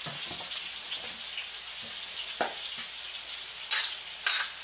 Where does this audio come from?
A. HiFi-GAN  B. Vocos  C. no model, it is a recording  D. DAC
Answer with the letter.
C